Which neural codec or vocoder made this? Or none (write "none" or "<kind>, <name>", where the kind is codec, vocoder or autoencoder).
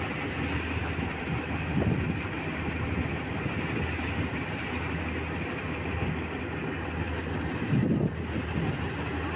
none